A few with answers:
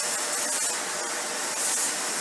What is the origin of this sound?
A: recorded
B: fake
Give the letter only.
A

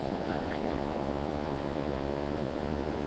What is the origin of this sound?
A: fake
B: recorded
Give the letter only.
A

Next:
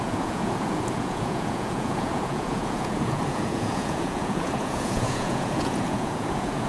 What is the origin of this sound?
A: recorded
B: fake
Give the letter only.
B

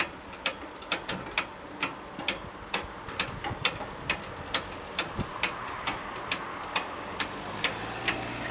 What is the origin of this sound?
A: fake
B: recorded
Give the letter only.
B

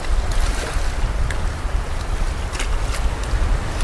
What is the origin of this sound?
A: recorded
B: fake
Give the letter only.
A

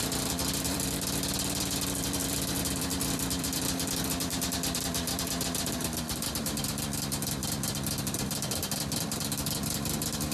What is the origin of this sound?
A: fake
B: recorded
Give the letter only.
A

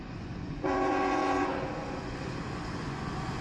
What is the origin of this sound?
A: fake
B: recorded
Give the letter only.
A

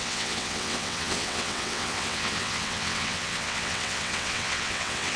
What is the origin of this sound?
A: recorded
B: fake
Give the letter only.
B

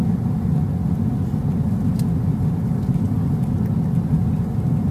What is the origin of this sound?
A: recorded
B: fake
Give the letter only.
A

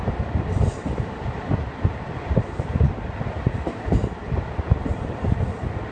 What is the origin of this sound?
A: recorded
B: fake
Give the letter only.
B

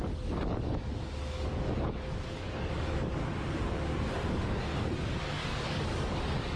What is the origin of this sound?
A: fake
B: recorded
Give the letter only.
A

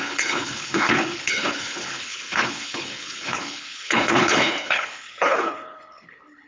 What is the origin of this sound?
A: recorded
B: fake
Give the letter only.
B